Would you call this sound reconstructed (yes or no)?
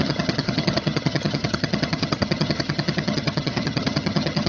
yes